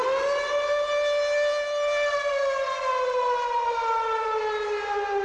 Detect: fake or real real